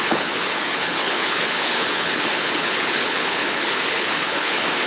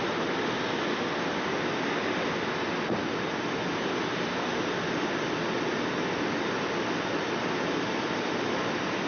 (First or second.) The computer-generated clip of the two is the first